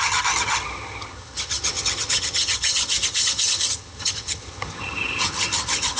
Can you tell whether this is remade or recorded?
remade